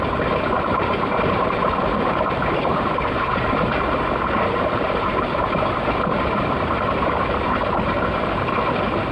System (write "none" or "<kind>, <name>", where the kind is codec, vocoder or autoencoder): vocoder, BigVGAN v2